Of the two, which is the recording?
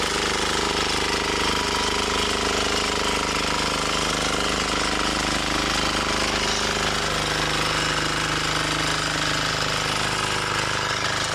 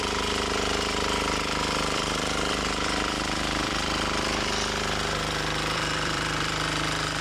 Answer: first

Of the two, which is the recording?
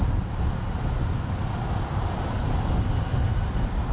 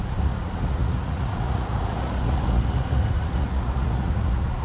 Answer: first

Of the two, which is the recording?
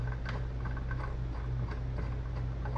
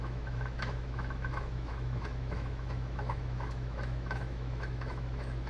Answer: first